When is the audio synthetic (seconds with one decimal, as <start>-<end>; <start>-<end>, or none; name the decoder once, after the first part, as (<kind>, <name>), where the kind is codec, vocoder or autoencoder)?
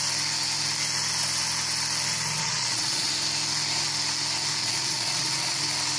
2.4-3.1 (vocoder, Vocos); 4.6-5.6